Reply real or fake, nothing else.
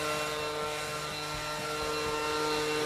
real